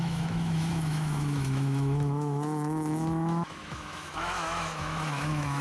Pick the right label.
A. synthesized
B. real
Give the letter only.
A